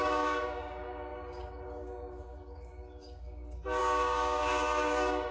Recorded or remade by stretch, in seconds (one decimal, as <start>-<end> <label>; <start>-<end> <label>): 0.0-5.3 remade